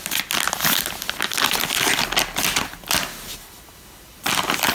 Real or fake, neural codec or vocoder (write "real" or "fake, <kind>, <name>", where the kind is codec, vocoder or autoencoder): real